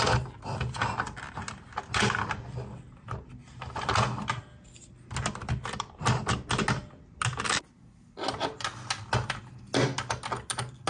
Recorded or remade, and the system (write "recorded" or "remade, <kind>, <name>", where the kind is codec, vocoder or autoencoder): recorded